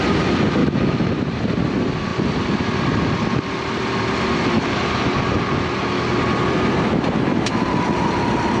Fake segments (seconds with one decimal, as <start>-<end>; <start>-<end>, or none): 0.6-1.1